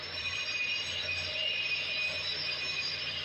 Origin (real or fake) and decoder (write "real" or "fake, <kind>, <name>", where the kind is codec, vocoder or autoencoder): fake, vocoder, BigVGAN v2